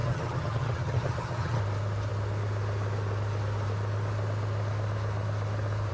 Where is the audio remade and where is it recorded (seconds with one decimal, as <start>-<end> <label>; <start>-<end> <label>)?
0.0-1.6 remade; 1.6-5.9 recorded